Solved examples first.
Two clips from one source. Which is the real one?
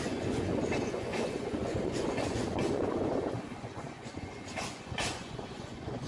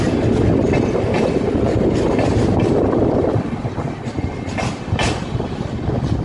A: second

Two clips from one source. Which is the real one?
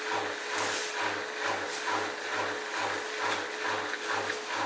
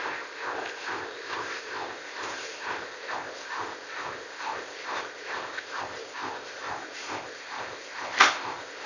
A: first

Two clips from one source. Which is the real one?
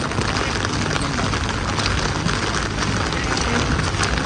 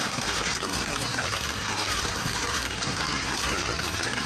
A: first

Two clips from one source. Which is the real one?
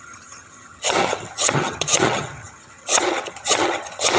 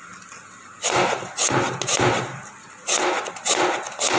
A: second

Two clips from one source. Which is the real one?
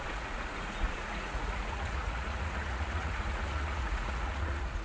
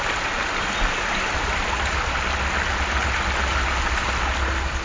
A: second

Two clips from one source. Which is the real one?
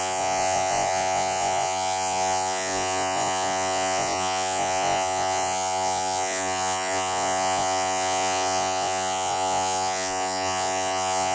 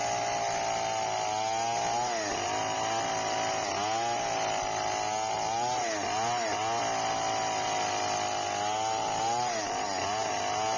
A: second